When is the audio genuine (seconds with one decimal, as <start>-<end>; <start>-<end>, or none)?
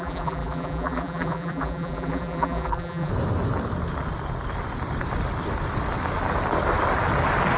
3.1-7.6